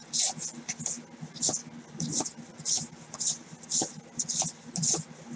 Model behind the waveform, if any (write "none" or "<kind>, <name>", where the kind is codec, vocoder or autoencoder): none